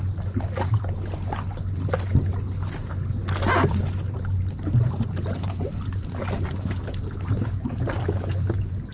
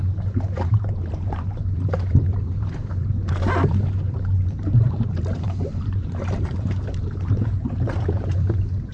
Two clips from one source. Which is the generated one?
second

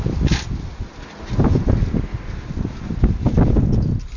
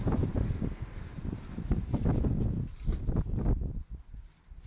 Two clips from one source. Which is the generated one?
second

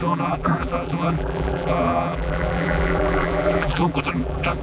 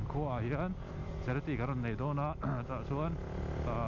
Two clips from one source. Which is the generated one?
first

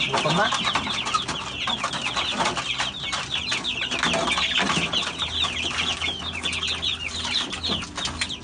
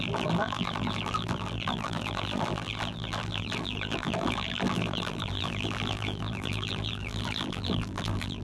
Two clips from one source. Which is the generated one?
second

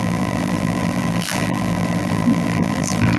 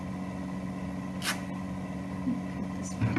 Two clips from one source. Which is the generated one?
first